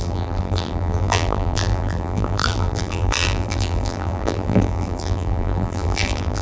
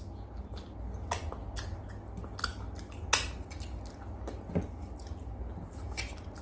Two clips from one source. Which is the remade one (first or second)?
first